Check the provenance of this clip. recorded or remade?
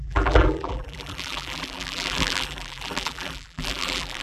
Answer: remade